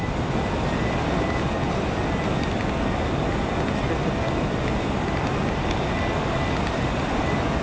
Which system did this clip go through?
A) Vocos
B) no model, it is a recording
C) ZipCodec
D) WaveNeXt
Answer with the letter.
B